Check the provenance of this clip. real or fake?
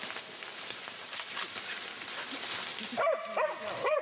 real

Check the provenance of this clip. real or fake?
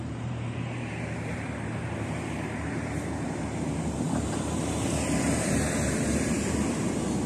fake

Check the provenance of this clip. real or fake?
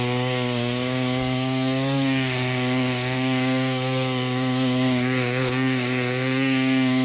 fake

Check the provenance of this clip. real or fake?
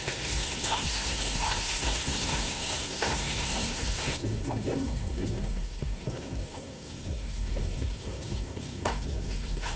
fake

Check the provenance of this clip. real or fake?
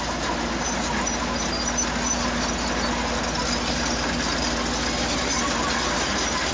real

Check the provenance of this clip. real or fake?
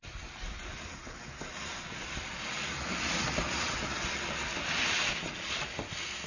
real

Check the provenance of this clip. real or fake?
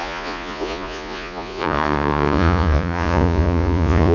fake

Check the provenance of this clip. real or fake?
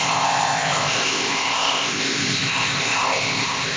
fake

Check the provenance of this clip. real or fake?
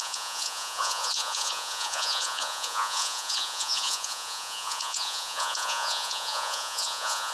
fake